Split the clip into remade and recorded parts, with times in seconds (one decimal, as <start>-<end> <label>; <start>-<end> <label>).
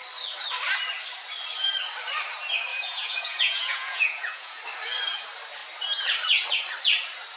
0.0-2.7 recorded; 2.7-4.6 remade; 4.6-7.4 recorded